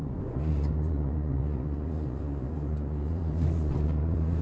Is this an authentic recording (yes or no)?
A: no